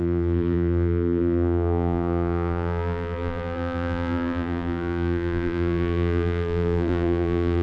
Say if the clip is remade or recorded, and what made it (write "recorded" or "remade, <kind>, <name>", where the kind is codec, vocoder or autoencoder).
remade, vocoder, BigVGAN v2